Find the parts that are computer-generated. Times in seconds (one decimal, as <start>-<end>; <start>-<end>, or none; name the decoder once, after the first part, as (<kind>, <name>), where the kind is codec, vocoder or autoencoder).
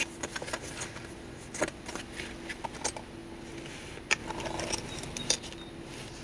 none